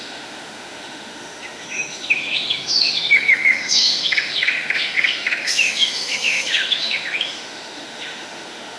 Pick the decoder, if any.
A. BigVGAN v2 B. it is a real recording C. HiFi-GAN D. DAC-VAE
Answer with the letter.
D